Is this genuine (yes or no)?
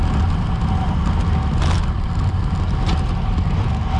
yes